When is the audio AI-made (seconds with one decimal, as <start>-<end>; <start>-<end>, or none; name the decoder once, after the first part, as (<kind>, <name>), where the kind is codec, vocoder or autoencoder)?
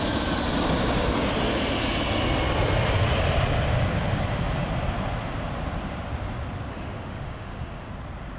6.7-7.9 (autoencoder, DAC-VAE)